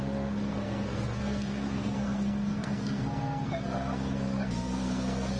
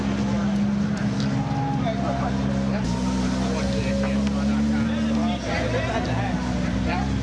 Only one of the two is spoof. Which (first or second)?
first